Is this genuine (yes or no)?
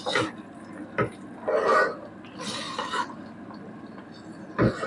yes